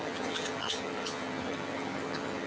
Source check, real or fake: fake